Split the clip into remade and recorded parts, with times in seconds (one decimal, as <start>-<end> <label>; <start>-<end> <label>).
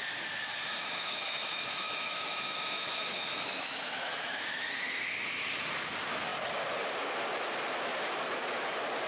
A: 0.0-0.6 recorded; 0.6-4.1 remade; 4.1-9.1 recorded